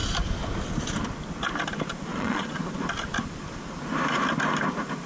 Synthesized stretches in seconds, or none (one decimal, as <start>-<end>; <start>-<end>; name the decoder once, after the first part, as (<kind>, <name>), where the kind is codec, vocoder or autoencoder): 2.1-2.7 (vocoder, Vocos)